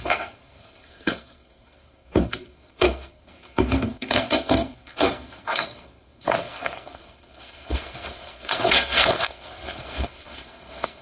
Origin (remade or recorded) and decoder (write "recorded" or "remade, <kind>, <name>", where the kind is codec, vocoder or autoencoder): remade, codec, SNAC